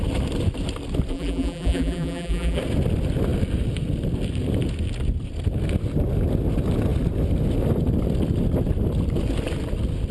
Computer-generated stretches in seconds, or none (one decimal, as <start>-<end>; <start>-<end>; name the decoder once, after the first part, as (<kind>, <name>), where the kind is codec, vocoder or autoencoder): 1.1-2.6 (vocoder, BigVGAN v2)